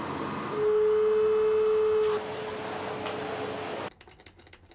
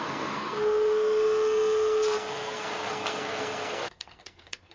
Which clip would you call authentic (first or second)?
first